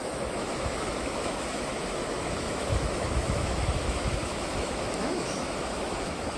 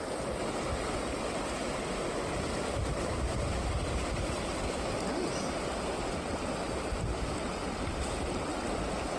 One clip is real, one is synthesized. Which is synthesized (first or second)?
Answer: first